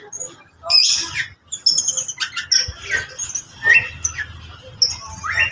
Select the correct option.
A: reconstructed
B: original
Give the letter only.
B